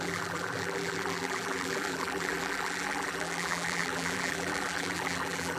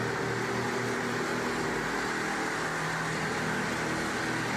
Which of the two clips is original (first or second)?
second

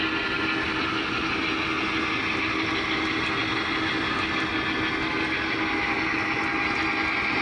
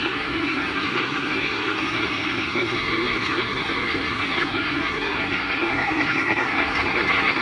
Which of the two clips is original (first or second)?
first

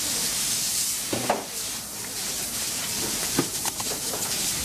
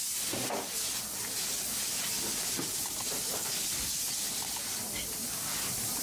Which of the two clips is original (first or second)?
second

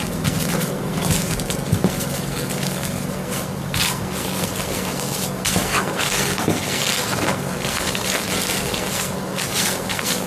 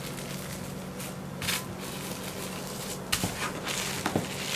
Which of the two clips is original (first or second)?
second